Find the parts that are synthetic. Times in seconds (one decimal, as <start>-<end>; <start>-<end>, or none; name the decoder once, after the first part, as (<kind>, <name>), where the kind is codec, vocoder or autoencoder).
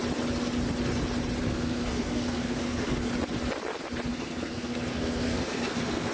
1.4-3.1 (codec, SNAC); 4.1-6.1